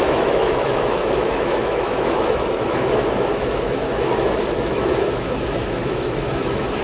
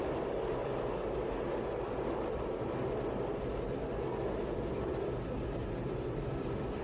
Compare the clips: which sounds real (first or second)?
second